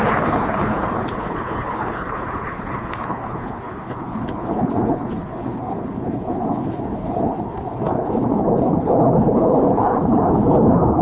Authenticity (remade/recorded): remade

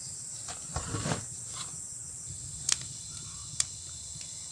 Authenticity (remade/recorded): recorded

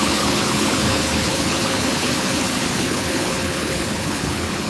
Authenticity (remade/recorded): remade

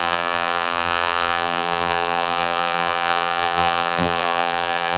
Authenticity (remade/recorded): remade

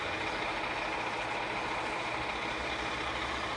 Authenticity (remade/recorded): recorded